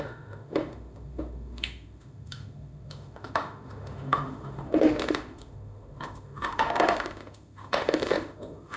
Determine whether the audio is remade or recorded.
remade